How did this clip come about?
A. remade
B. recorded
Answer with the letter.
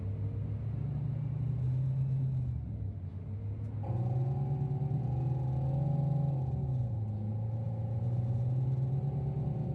B